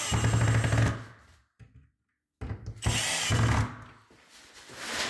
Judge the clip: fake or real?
real